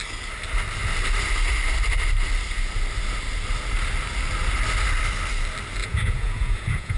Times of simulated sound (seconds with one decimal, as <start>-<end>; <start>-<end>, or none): 5.8-7.0